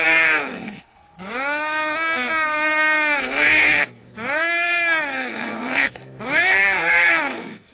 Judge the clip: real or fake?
fake